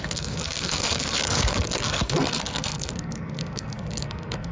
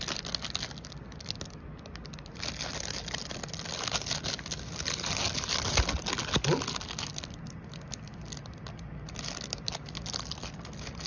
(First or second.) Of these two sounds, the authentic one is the second